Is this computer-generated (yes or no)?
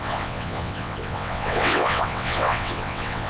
yes